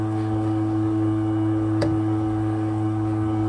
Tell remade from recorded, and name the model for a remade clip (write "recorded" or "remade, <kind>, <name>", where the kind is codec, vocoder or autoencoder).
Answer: remade, codec, DAC